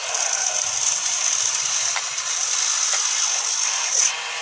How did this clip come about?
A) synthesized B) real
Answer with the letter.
B